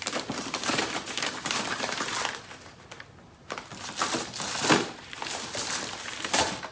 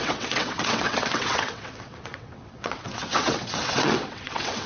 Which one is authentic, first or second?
first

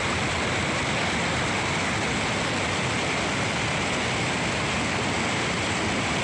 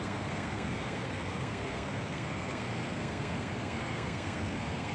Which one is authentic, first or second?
first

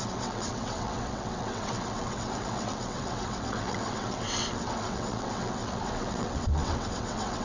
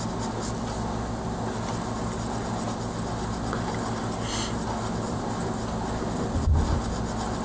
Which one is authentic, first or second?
second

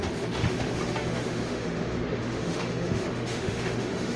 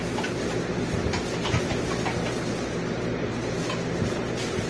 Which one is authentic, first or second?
second